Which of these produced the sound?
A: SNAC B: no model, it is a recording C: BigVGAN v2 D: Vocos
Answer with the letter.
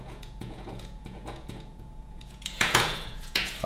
D